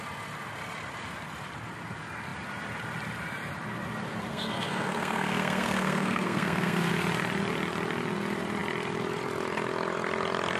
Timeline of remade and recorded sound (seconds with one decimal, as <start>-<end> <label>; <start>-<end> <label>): 0.0-4.3 recorded; 4.3-6.9 remade; 6.9-10.6 recorded